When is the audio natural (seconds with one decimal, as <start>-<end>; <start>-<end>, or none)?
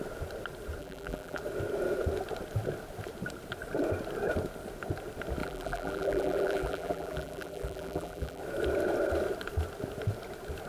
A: 0.0-0.8; 1.4-5.4; 8.4-10.7